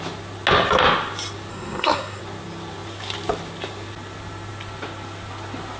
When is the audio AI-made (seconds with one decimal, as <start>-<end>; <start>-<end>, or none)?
1.5-2.2